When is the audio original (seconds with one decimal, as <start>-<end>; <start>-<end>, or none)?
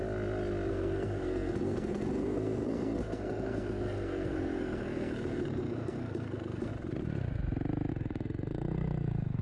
0.0-0.7; 6.7-7.9